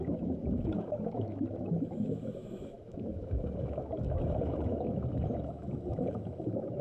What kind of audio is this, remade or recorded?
remade